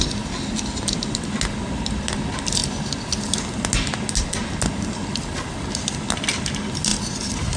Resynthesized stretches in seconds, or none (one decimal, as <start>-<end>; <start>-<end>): none